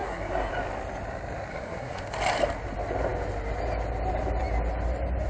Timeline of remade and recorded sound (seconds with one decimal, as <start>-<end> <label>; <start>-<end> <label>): 0.0-0.5 remade; 0.5-1.5 recorded; 1.5-2.0 remade; 2.0-5.3 recorded